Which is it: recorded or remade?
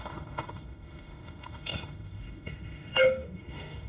remade